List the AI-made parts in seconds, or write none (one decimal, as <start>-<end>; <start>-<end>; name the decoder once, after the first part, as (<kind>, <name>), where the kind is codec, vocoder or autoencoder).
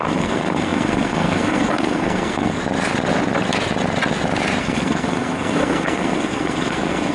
0.0-2.6 (codec, SNAC); 4.6-7.1